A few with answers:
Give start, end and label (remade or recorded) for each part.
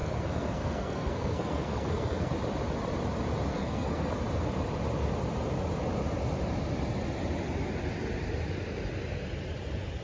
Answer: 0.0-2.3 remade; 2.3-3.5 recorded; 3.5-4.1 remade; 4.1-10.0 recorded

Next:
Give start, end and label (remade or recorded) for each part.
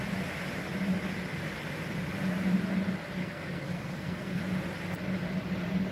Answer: 0.0-3.2 recorded; 3.2-4.4 remade; 4.4-5.9 recorded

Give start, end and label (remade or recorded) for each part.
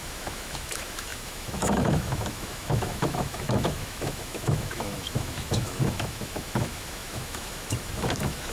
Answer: 0.0-8.5 remade